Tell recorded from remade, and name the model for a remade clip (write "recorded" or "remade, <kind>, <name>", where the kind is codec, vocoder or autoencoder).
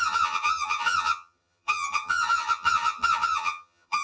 remade, vocoder, HiFi-GAN